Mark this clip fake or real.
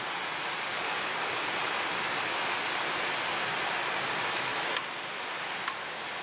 real